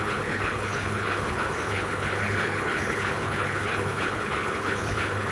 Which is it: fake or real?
fake